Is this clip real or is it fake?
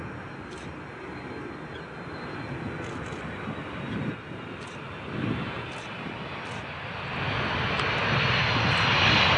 real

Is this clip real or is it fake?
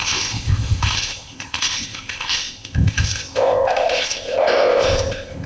fake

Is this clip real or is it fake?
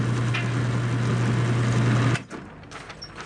real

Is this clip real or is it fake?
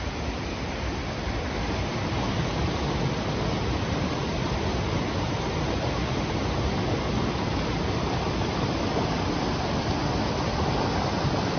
real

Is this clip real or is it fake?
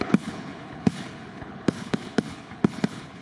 fake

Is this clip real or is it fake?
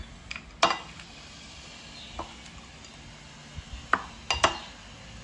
real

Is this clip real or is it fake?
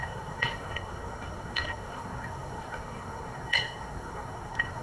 fake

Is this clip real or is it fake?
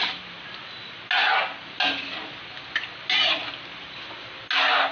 real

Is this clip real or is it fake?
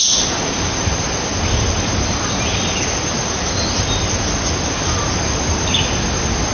real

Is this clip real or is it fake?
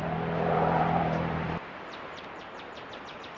fake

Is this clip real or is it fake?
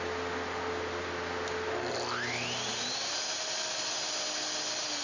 real